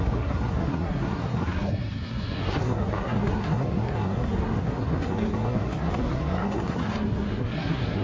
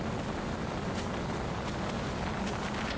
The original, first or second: second